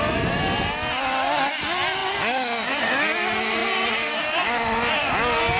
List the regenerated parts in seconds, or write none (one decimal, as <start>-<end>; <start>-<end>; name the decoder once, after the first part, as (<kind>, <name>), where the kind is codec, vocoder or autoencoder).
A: none